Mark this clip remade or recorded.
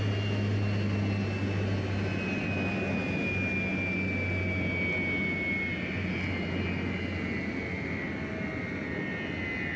recorded